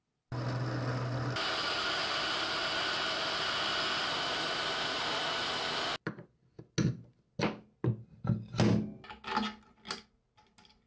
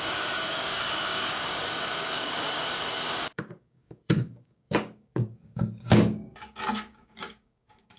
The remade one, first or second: second